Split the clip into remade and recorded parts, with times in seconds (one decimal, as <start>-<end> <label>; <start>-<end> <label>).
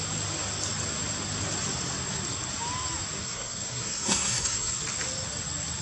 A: 0.0-3.2 recorded; 3.2-4.8 remade; 4.8-5.8 recorded